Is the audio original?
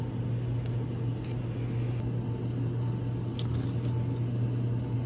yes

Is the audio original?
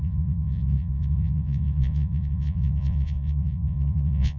no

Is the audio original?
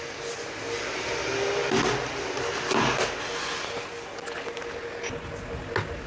yes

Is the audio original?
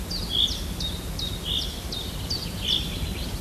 yes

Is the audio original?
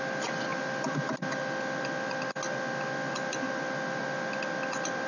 yes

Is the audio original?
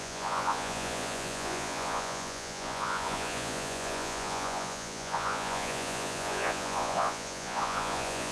no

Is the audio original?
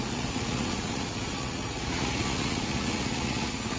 no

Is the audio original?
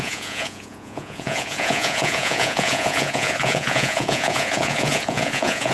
no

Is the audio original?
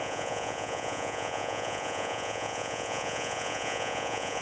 no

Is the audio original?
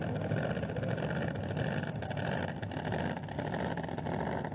yes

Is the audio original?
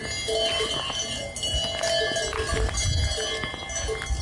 yes